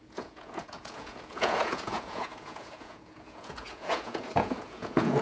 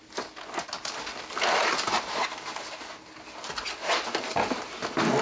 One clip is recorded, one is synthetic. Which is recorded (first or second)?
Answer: second